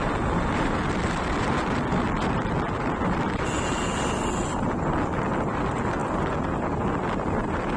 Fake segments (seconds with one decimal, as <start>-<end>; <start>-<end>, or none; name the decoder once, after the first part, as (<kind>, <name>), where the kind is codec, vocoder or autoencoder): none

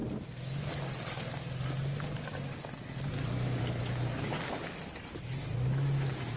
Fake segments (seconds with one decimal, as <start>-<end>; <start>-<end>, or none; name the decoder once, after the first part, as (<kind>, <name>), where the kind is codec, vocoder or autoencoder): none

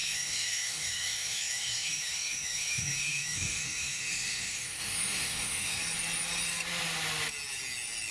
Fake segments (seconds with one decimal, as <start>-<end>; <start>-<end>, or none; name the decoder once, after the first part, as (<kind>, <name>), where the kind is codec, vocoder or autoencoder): 0.0-5.8 (autoencoder, DAC-VAE)

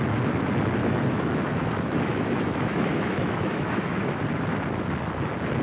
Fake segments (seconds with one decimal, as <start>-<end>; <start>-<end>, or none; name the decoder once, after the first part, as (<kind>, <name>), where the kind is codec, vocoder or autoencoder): 0.8-4.2 (autoencoder, DAC-VAE)

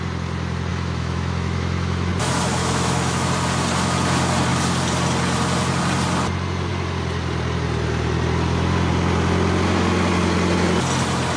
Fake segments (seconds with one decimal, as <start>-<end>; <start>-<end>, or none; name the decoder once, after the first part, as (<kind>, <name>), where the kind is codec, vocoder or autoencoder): 0.7-2.1 (autoencoder, DAC-VAE); 2.6-3.3